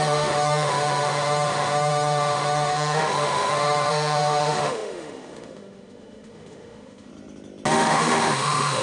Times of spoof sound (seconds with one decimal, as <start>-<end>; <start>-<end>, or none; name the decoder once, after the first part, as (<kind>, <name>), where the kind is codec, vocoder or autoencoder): 0.0-7.1 (autoencoder, DAC-VAE); 7.7-8.8